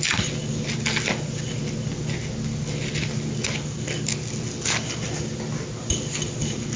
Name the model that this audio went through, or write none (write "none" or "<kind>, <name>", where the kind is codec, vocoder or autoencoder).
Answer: none